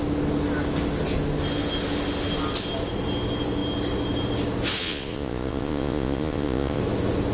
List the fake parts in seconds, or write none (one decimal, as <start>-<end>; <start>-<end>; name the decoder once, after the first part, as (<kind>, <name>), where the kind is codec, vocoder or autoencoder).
4.8-6.8 (vocoder, Vocos)